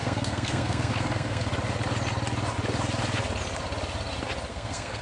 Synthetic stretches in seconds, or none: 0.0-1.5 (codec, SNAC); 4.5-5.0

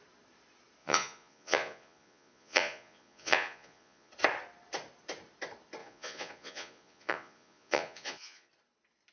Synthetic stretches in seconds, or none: 0.8-4.1 (vocoder, Vocos); 5.8-8.5

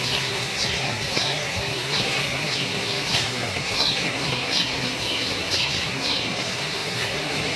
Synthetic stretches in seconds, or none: 0.0-7.6 (codec, SNAC)

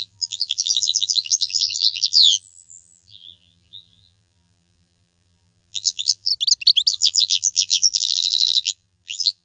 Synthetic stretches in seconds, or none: 0.0-6.3 (vocoder, BigVGAN v2); 6.9-9.4

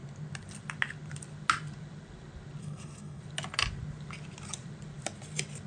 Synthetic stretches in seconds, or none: 2.6-3.2 (codec, SNAC)

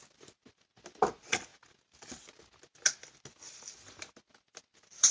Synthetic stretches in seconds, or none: none

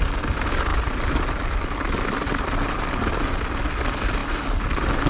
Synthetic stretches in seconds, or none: none